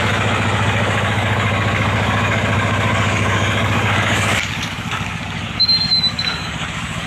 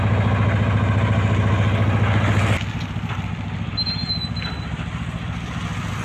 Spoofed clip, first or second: first